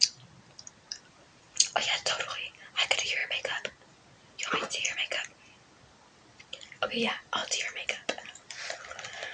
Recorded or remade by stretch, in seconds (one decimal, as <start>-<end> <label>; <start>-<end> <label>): 0.0-0.9 recorded; 0.9-2.2 remade; 2.2-9.3 recorded